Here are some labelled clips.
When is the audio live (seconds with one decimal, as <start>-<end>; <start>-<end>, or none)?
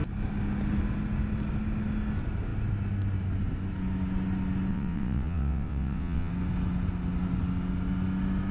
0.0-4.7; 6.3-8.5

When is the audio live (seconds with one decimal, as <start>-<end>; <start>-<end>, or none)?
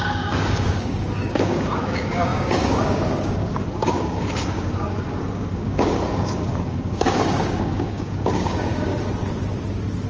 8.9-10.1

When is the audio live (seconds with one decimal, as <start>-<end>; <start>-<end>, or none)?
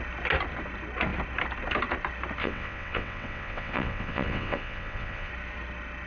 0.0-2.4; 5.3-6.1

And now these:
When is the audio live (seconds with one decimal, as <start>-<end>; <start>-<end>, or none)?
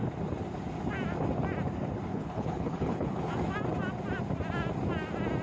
0.0-2.1; 3.2-5.4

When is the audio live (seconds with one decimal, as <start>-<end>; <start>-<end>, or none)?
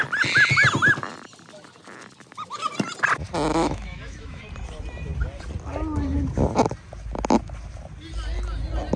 0.0-3.5; 4.4-9.0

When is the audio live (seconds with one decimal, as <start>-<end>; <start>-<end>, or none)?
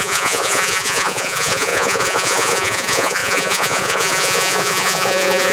none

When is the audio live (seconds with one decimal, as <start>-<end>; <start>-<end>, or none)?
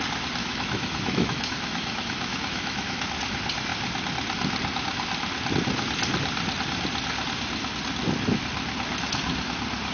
0.0-0.4; 3.1-9.9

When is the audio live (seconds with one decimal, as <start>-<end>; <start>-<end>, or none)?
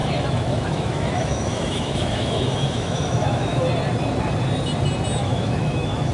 3.7-5.2